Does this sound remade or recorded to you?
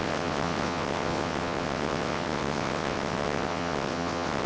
remade